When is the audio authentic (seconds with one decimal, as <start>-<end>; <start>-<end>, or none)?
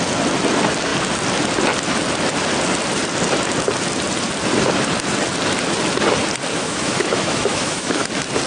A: 0.0-6.5; 8.1-8.5